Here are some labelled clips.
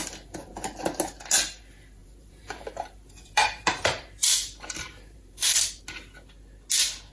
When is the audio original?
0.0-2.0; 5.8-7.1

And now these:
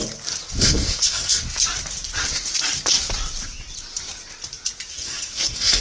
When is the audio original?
0.0-0.6; 1.4-4.9

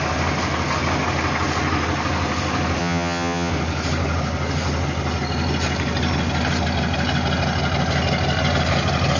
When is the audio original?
0.0-2.8; 3.5-9.2

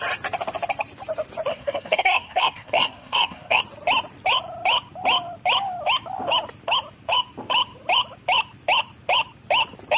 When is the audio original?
0.0-1.5; 3.6-10.0

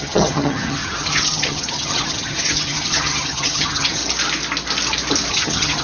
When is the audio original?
4.0-5.3